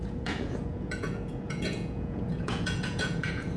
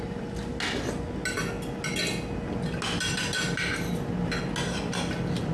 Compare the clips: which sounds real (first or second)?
second